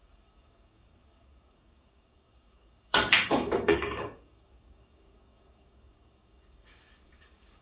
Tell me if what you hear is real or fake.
fake